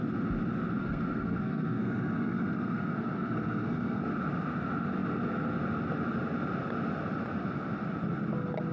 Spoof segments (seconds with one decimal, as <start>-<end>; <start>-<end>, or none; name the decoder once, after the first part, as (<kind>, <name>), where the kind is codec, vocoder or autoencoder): 0.8-4.0 (codec, SNAC)